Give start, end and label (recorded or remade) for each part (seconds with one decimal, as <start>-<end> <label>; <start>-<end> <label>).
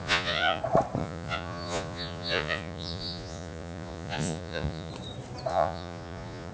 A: 0.0-0.6 remade; 0.6-1.0 recorded; 1.0-4.9 remade; 4.9-5.5 recorded; 5.5-6.5 remade